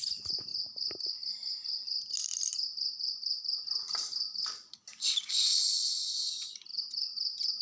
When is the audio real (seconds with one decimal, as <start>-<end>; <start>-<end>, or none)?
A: 0.0-6.7